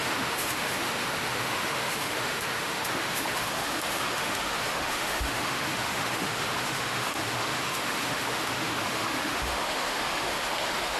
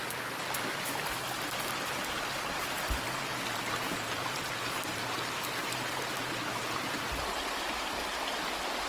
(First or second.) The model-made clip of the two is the first